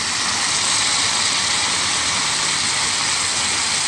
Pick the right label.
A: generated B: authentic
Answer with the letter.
B